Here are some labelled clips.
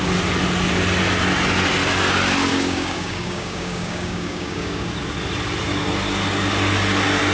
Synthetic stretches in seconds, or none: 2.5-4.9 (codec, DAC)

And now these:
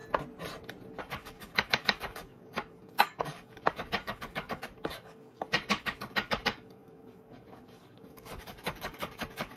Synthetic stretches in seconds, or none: 1.0-9.6 (codec, DAC)

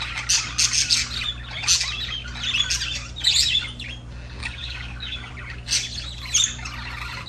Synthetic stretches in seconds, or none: 4.4-5.3 (codec, DAC)

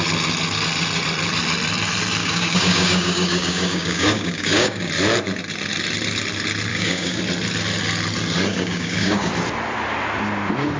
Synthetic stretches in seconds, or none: 2.2-4.9 (codec, DAC); 6.7-7.2; 8.5-9.3

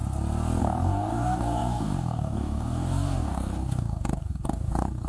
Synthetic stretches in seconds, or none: 0.6-5.1 (codec, DAC)

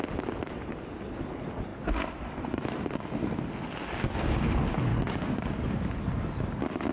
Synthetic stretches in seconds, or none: 4.9-5.6 (codec, DAC)

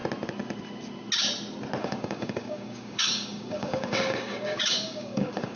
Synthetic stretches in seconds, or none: 1.8-5.6 (codec, DAC)

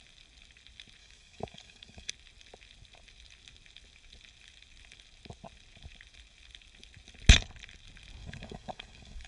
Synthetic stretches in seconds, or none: 1.0-2.1 (codec, DAC); 8.2-9.3